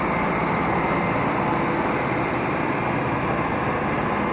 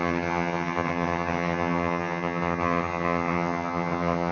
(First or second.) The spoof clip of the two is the second